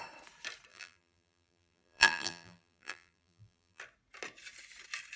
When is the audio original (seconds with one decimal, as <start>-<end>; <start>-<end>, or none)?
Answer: 0.0-0.7; 3.8-5.2

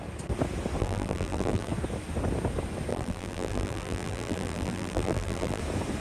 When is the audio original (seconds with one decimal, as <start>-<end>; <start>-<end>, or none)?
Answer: 0.0-0.8; 1.7-2.9; 5.6-6.0